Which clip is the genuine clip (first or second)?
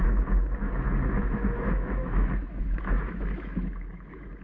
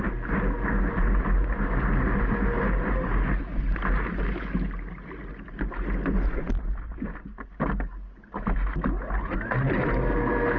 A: second